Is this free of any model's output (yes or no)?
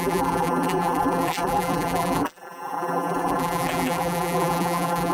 no